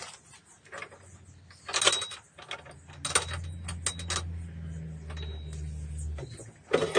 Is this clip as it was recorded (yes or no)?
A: yes